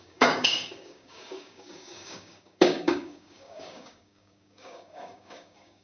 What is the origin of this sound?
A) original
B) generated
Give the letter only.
B